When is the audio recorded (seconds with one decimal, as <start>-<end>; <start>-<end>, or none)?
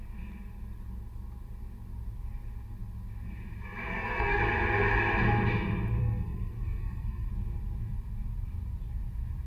0.0-3.9; 4.4-6.0; 7.3-9.5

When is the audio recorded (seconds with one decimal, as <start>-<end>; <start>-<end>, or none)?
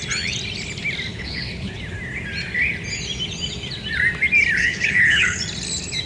0.0-1.1; 1.8-4.6; 5.4-6.1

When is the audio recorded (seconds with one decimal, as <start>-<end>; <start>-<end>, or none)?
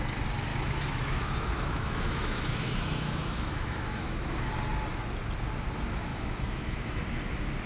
0.0-0.5; 4.5-6.1; 7.0-7.7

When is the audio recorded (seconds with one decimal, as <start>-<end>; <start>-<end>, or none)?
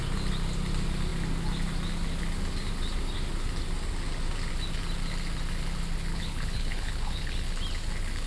0.0-6.1; 7.3-8.3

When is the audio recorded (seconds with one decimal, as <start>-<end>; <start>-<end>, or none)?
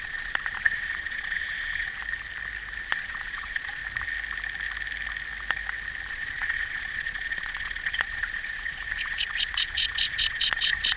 2.0-2.9; 3.8-6.1